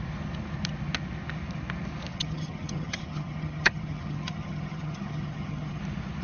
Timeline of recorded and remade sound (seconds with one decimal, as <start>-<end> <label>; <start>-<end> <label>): 0.0-2.1 recorded; 2.1-5.8 remade; 5.8-6.2 recorded